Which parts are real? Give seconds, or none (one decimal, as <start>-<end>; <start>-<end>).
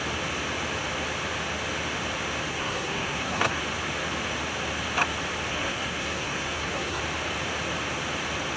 0.0-2.5; 3.6-5.5; 7.0-8.6